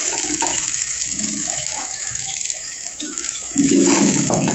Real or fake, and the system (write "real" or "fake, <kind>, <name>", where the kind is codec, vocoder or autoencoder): fake, autoencoder, DAC-VAE